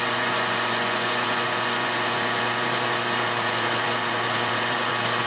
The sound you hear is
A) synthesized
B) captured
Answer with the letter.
A